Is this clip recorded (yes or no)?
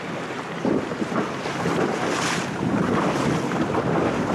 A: yes